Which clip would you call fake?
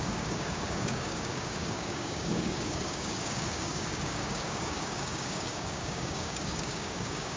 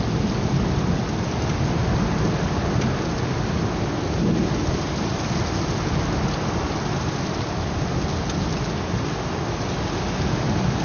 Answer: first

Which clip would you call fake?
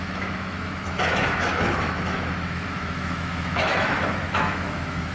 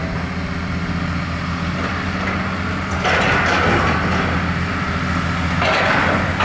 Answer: first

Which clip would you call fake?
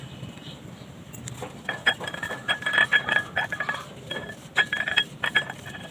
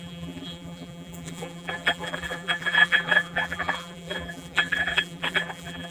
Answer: second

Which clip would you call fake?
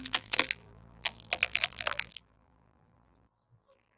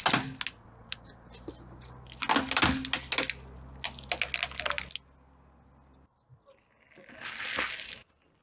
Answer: first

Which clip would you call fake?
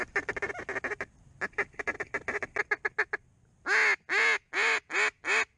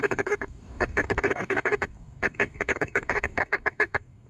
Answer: second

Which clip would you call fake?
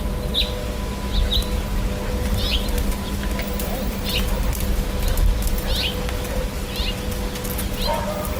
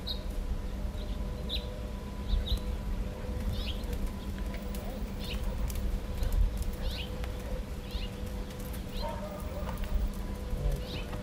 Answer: second